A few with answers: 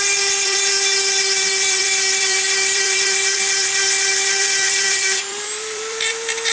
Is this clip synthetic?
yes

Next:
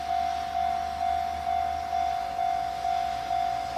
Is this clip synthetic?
no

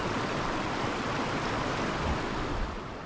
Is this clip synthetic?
no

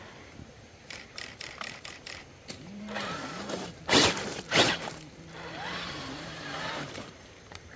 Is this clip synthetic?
yes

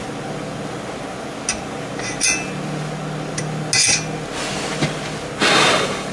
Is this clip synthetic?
no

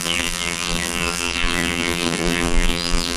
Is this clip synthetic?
yes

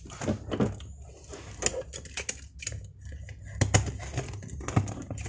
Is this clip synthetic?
no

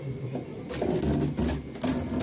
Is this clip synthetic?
no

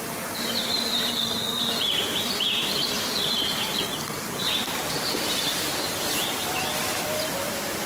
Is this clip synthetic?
yes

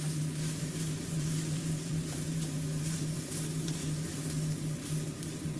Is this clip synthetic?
yes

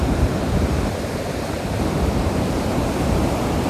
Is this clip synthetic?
yes